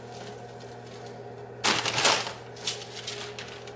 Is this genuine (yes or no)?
yes